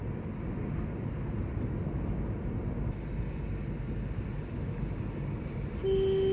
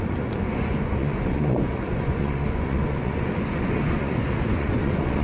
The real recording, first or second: first